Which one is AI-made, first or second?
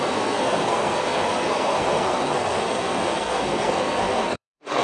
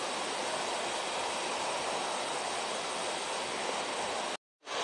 first